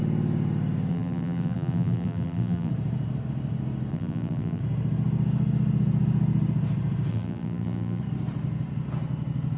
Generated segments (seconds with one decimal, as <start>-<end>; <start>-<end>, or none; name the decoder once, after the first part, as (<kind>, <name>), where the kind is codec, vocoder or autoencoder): 0.9-2.7 (vocoder, BigVGAN v2); 3.9-4.6; 7.1-8.0

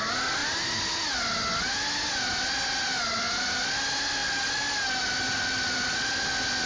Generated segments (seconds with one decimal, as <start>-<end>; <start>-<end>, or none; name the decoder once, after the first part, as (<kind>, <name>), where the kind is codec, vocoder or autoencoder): none

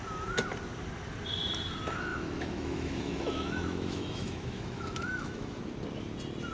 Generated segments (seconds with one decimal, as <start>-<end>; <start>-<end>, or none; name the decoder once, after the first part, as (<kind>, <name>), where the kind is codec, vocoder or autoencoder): 2.1-5.6 (autoencoder, DAC-VAE)

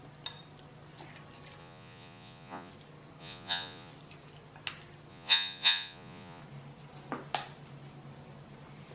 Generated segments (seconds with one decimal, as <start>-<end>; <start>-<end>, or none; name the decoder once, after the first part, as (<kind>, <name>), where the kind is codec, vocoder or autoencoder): 1.6-2.7 (vocoder, Vocos); 3.2-3.9; 5.1-6.4

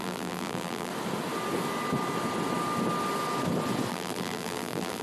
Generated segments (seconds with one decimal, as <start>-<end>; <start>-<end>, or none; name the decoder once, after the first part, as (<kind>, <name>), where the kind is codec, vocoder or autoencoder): 0.0-0.9 (vocoder, BigVGAN v2); 3.9-5.0

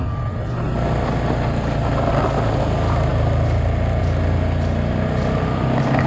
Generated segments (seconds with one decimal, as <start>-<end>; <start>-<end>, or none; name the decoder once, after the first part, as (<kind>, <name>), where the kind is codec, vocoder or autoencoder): none